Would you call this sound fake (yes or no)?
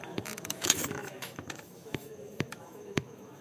yes